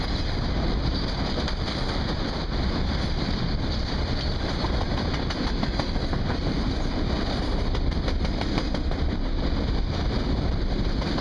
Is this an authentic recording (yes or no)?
no